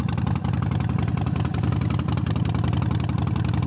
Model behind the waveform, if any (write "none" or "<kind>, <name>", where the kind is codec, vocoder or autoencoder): none